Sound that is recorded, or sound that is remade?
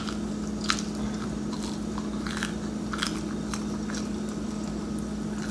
recorded